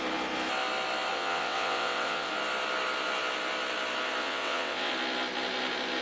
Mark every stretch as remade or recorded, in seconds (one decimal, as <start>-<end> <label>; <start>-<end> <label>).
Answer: 0.0-1.1 recorded; 1.1-2.3 remade; 2.3-4.2 recorded; 4.2-4.9 remade; 4.9-6.0 recorded